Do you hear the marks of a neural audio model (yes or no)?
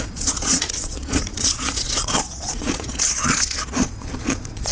yes